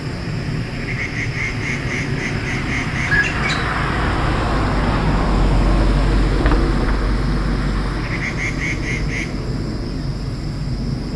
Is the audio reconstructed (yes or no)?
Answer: no